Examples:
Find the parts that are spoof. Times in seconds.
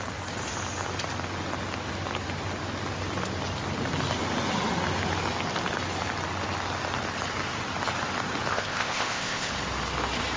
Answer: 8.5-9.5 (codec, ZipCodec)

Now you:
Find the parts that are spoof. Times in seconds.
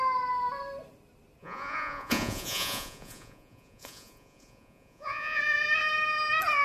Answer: 1.4-5.4 (vocoder, Vocos)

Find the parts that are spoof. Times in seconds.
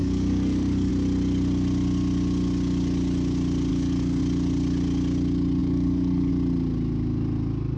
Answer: 0.0-0.9 (codec, DAC); 3.7-4.2; 5.6-6.3